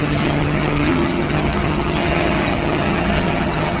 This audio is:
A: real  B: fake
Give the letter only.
B